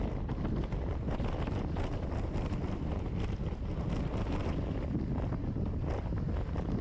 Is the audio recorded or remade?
recorded